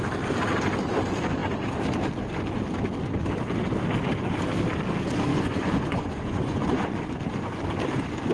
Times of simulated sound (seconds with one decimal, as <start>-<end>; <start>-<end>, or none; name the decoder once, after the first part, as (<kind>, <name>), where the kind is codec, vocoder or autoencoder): 5.3-7.1 (vocoder, Vocos)